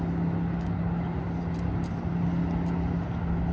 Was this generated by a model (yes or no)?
no